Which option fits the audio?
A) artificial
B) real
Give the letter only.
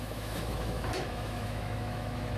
A